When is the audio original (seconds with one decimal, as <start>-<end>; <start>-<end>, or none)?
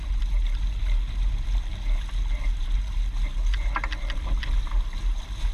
0.0-5.5